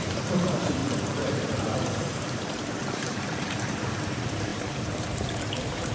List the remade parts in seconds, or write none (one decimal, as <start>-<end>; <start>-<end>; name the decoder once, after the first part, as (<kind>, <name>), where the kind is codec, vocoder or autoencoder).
0.0-5.9 (vocoder, BigVGAN v2)